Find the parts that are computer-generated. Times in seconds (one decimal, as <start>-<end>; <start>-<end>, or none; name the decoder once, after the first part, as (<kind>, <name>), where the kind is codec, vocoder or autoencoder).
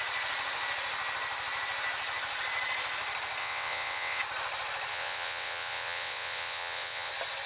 3.4-4.2 (vocoder, WaveNeXt); 4.9-7.1